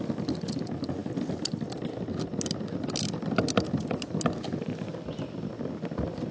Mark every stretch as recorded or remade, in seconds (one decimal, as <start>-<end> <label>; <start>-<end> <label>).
0.0-6.3 recorded